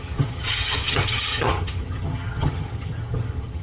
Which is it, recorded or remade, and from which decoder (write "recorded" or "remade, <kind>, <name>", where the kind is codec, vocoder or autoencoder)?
remade, vocoder, HiFi-GAN